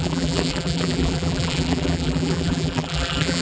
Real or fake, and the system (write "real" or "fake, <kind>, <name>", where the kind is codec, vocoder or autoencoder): fake, vocoder, BigVGAN v2